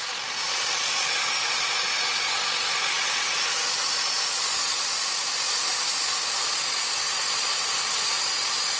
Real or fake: real